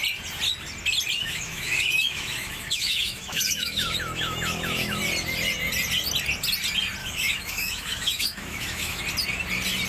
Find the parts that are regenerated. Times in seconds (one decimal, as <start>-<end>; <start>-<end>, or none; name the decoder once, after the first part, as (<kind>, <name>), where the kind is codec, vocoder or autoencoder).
1.2-5.0 (autoencoder, DAC-VAE); 7.0-9.0